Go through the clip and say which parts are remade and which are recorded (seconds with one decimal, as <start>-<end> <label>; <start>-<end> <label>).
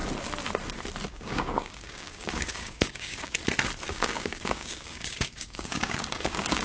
0.0-1.1 recorded; 1.1-3.4 remade; 3.4-3.9 recorded; 3.9-6.6 remade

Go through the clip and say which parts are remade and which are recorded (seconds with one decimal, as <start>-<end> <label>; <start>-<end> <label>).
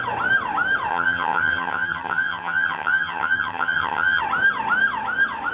0.0-0.9 recorded; 0.9-4.2 remade; 4.2-5.5 recorded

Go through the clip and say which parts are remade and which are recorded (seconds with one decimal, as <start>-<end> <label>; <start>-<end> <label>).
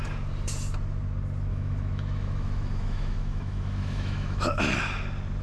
0.0-1.5 recorded; 1.5-4.7 remade; 4.7-5.4 recorded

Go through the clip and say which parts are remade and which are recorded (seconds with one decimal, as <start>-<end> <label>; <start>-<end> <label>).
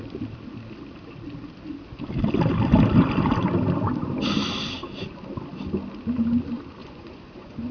0.0-6.8 recorded; 6.8-7.7 remade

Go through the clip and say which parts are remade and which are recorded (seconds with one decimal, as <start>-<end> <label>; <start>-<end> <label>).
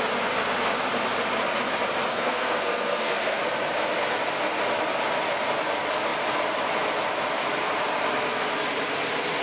0.0-2.1 recorded; 2.1-3.4 remade; 3.4-9.4 recorded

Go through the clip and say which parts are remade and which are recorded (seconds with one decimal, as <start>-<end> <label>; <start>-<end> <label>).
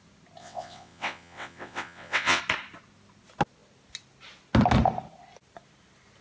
0.0-0.4 recorded; 0.4-2.4 remade; 2.4-6.2 recorded